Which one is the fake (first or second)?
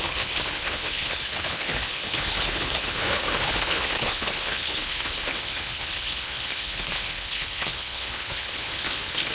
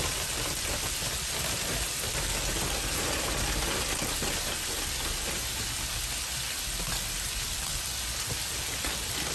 first